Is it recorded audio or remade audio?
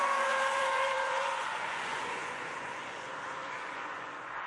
remade